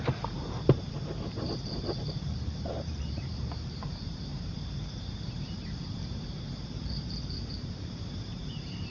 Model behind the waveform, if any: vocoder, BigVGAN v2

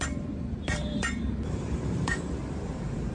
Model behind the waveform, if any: vocoder, BigVGAN v2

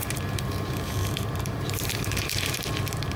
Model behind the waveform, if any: vocoder, BigVGAN v2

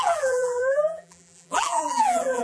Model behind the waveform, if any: vocoder, BigVGAN v2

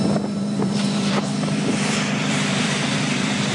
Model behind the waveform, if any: vocoder, BigVGAN v2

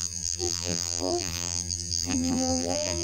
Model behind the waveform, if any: vocoder, BigVGAN v2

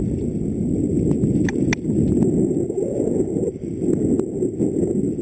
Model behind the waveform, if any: none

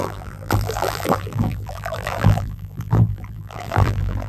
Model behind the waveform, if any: vocoder, BigVGAN v2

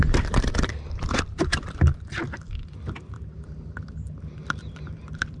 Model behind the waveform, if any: vocoder, BigVGAN v2